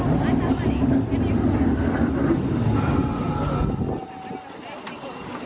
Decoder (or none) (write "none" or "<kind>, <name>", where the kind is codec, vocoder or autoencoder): none